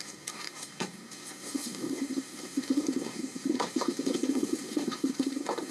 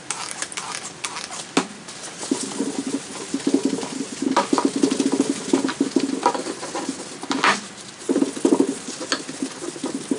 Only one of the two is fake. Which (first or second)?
first